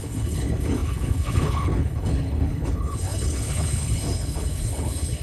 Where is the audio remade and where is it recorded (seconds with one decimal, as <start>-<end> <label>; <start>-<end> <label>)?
0.0-5.2 remade